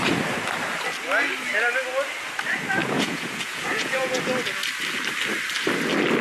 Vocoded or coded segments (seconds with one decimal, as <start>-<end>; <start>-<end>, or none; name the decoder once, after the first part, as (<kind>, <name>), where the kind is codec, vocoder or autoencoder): 2.8-4.2 (vocoder, Vocos)